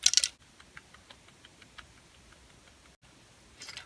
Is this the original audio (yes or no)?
yes